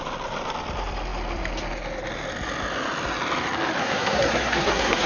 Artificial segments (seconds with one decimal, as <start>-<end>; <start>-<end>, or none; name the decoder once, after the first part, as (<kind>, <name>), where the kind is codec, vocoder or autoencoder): 3.8-5.1 (codec, SNAC)